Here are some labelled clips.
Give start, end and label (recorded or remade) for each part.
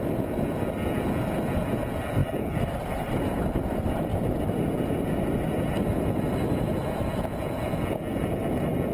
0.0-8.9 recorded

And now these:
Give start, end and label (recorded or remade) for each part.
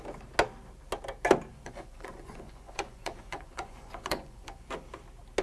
0.0-1.5 recorded; 1.5-4.7 remade; 4.7-5.4 recorded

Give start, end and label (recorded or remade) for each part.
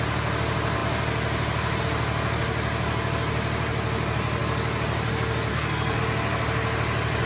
0.0-5.5 recorded; 5.5-6.0 remade; 6.0-7.3 recorded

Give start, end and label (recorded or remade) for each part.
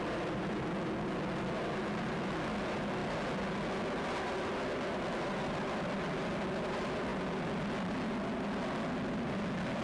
0.0-9.8 recorded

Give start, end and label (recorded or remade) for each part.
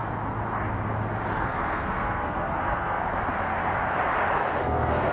0.0-1.4 recorded; 1.4-3.0 remade; 3.0-4.6 recorded; 4.6-5.1 remade